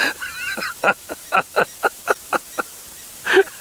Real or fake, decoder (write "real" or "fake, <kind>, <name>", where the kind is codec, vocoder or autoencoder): fake, vocoder, BigVGAN v2